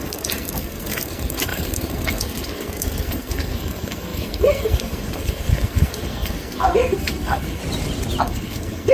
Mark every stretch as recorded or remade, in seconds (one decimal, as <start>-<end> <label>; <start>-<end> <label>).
0.0-7.6 remade; 7.6-8.2 recorded; 8.2-8.9 remade